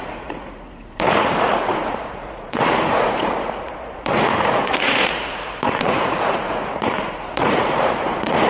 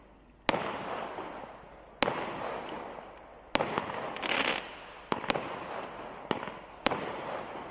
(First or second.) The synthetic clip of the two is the first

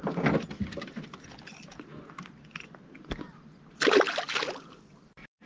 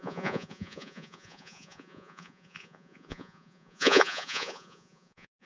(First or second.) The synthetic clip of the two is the second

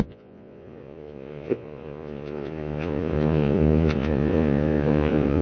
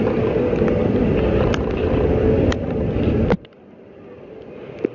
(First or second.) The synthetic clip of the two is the first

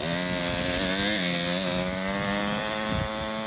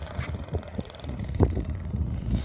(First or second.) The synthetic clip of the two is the second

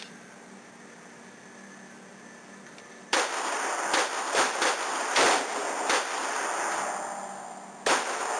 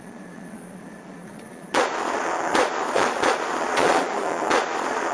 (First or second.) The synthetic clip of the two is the second